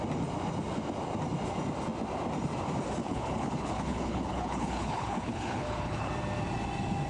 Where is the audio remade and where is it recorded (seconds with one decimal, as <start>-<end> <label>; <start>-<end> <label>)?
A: 0.0-3.0 recorded; 3.0-6.1 remade; 6.1-7.1 recorded